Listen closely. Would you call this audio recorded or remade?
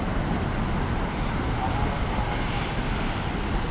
recorded